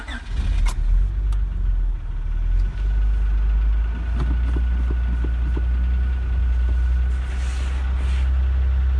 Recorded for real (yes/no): yes